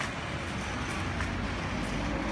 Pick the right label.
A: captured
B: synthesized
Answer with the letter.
A